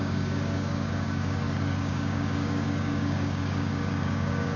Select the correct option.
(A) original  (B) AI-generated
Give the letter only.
B